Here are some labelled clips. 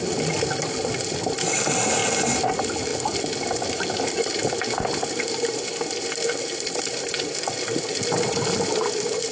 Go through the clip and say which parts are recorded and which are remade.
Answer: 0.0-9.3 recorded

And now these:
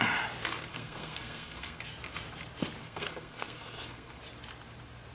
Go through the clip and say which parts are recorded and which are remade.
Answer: 0.0-0.7 recorded; 0.7-1.8 remade; 1.8-2.8 recorded; 2.8-4.2 remade; 4.2-5.1 recorded

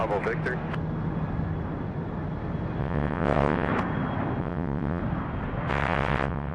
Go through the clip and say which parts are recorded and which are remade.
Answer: 0.0-2.8 recorded; 2.8-3.7 remade; 3.7-4.4 recorded; 4.4-5.0 remade; 5.0-5.7 recorded; 5.7-6.5 remade

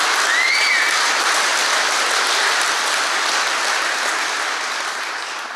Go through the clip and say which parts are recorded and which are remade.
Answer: 0.0-5.6 recorded

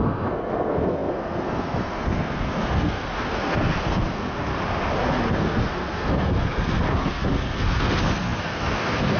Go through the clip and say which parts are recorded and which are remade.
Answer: 0.0-4.5 remade; 4.5-5.3 recorded; 5.3-9.2 remade

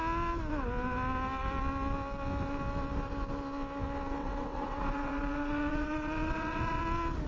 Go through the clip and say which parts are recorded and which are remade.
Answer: 0.0-4.2 recorded; 4.2-6.8 remade; 6.8-7.3 recorded

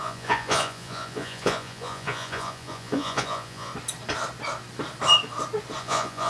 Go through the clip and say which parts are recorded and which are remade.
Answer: 0.0-3.7 remade; 3.7-5.8 recorded; 5.8-6.3 remade